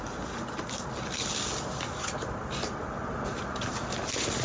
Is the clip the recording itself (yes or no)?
yes